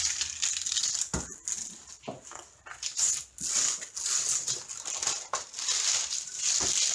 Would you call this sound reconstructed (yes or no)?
no